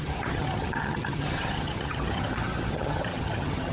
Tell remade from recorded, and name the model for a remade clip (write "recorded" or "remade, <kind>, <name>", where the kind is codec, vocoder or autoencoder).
remade, vocoder, HiFi-GAN